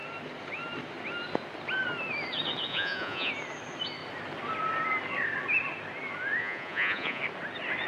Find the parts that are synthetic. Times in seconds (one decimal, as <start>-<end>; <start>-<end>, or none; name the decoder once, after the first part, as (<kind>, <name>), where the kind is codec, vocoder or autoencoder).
2.7-3.3 (vocoder, Vocos); 6.4-7.2